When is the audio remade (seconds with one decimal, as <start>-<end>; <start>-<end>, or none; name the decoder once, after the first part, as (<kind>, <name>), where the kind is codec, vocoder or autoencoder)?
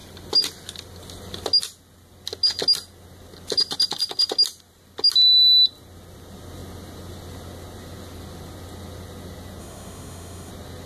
9.6-10.5 (autoencoder, DAC-VAE)